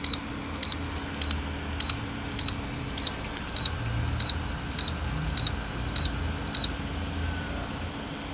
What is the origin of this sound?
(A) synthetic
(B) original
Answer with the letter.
B